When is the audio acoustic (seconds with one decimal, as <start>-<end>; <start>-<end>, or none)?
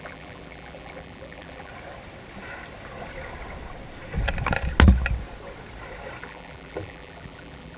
1.7-6.2